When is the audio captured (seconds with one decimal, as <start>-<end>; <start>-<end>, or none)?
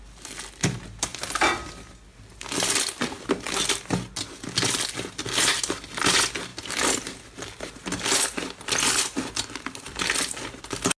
0.0-11.0